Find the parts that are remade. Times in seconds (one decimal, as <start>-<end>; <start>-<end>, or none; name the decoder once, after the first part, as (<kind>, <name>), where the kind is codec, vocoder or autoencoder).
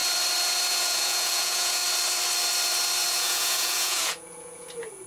0.7-1.8 (vocoder, Vocos); 3.1-5.1